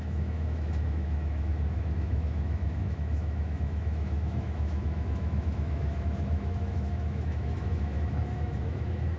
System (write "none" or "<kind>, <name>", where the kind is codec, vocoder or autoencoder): autoencoder, DAC-VAE